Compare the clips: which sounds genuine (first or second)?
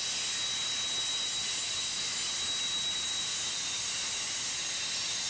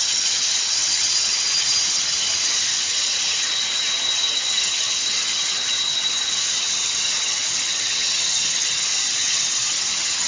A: first